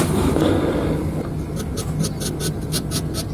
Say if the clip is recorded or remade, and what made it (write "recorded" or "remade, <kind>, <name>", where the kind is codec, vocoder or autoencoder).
recorded